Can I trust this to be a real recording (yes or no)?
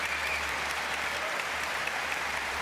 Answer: no